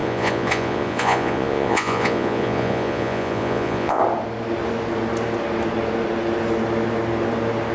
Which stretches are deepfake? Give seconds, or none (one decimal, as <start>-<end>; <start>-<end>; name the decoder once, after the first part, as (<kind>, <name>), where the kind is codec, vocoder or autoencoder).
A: 0.0-4.0 (vocoder, Vocos)